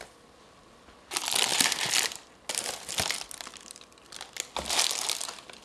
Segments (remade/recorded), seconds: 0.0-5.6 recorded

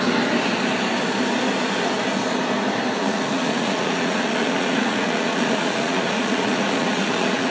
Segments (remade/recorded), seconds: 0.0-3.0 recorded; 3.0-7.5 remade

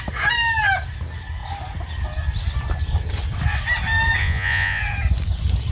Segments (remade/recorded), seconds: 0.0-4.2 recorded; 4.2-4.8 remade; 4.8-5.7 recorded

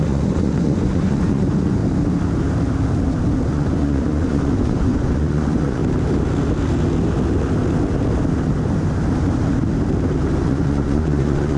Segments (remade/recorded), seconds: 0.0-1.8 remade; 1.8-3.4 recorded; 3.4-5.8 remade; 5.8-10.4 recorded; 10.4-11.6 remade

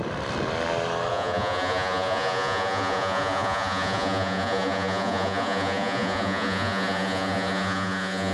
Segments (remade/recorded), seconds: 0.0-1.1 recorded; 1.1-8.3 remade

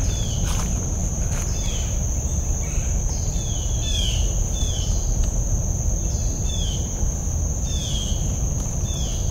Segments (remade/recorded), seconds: 0.0-9.3 recorded

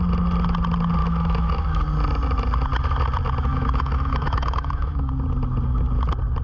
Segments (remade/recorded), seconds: 0.0-1.0 recorded; 1.0-1.8 remade; 1.8-3.5 recorded; 3.5-5.1 remade; 5.1-6.4 recorded